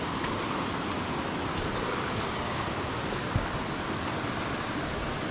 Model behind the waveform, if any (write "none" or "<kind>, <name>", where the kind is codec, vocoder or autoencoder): none